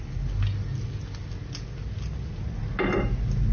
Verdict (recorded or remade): recorded